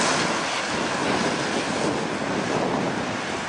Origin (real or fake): real